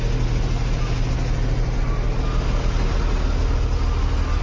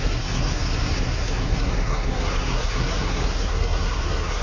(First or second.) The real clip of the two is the first